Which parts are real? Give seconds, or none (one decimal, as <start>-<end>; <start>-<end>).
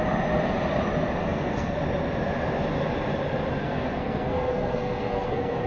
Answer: 0.0-1.2; 1.8-3.6